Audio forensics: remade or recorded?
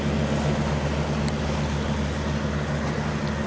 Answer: recorded